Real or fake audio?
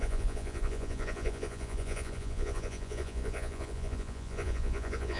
fake